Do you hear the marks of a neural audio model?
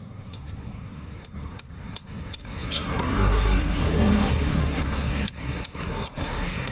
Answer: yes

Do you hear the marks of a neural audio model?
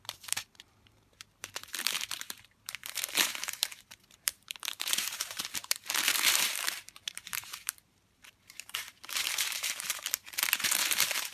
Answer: yes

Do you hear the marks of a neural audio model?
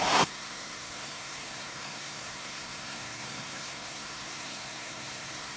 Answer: yes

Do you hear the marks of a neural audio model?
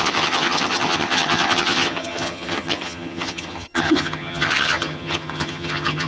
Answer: yes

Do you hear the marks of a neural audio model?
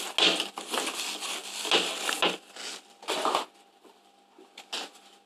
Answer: no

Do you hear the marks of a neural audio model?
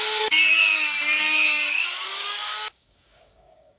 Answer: yes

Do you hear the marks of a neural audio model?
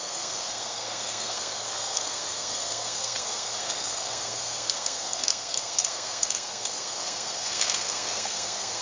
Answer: yes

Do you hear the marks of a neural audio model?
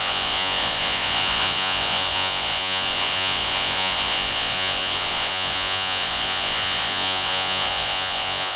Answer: yes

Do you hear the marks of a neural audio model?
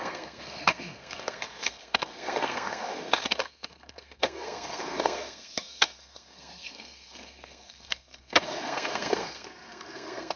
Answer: yes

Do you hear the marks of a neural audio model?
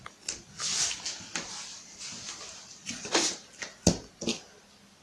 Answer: no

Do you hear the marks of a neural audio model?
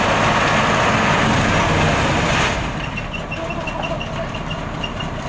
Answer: no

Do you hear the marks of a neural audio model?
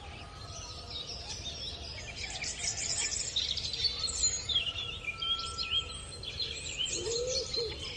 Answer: no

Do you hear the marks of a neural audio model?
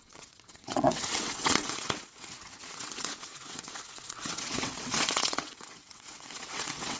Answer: yes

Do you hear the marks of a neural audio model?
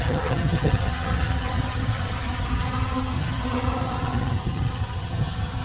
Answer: yes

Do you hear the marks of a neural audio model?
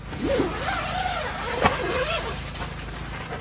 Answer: no